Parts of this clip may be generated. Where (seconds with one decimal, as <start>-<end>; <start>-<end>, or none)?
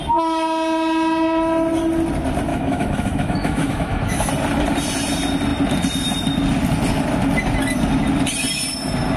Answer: 2.5-4.3